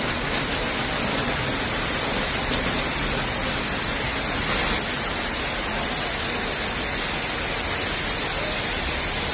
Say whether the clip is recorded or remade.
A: recorded